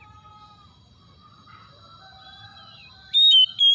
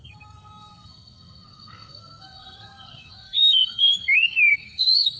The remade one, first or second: second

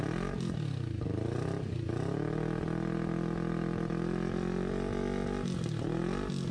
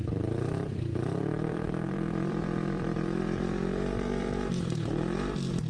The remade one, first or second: second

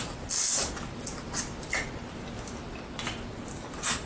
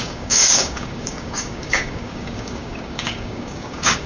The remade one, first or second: second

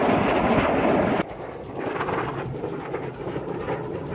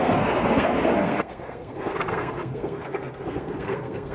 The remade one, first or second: second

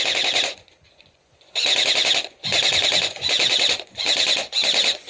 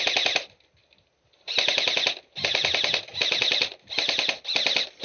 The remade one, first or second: first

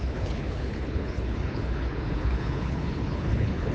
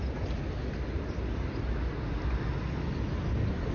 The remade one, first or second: first